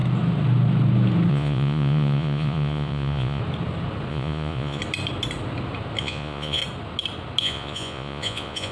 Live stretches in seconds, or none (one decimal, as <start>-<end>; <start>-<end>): 0.0-1.3; 3.4-4.1; 4.8-6.0; 6.6-7.4